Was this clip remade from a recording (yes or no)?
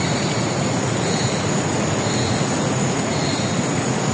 yes